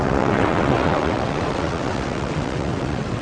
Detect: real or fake fake